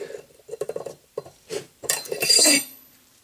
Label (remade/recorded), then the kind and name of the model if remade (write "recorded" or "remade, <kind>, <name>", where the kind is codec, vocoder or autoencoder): remade, vocoder, BigVGAN v2